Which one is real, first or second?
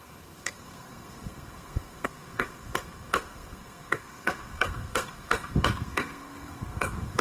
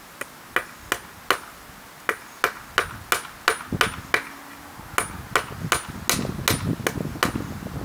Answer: second